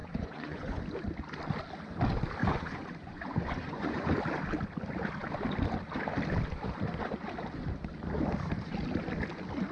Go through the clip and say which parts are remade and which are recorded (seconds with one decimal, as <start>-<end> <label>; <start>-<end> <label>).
0.0-0.8 remade; 0.8-2.4 recorded; 2.4-4.1 remade; 4.1-9.7 recorded